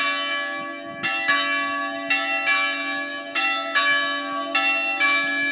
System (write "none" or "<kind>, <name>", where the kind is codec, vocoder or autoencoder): none